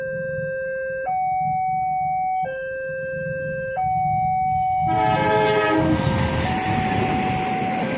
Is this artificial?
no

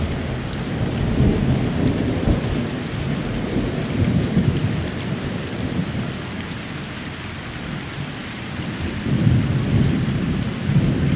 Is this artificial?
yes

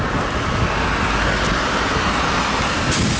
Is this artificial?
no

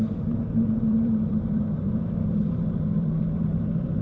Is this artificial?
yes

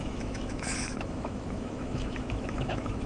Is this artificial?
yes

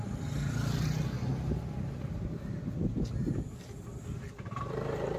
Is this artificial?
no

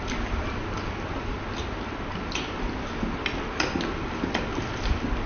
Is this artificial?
no